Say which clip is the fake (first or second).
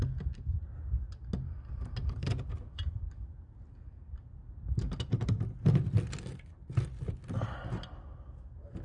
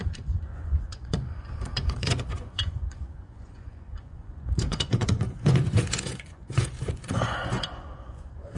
second